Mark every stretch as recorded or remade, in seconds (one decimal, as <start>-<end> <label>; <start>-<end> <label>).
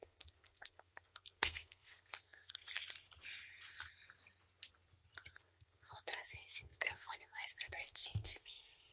0.0-2.8 remade; 2.8-5.3 recorded; 5.3-8.9 remade